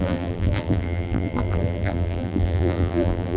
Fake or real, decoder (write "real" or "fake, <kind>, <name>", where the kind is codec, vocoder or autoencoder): fake, vocoder, BigVGAN v2